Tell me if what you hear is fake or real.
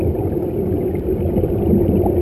real